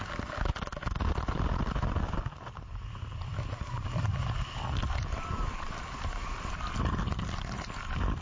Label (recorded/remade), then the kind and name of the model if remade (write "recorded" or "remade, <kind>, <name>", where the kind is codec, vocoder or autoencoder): recorded